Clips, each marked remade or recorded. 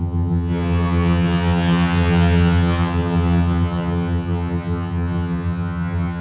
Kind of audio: remade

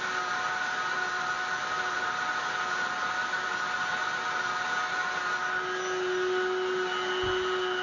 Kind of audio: recorded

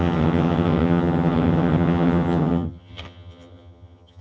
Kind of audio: remade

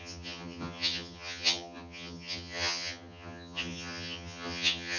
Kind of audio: remade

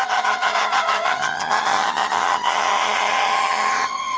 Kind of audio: remade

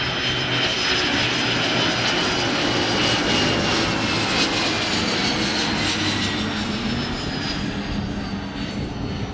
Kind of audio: recorded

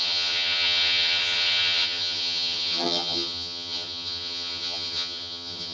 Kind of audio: remade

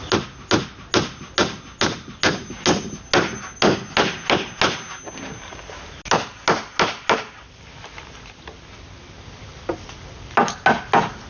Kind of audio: recorded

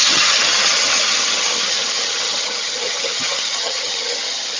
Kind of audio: remade